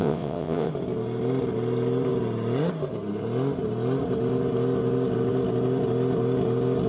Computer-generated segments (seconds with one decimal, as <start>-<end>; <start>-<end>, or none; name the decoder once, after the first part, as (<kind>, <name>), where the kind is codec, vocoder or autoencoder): 0.0-0.7 (vocoder, WaveNeXt)